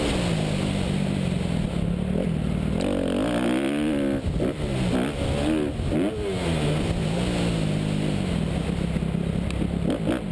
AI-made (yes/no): no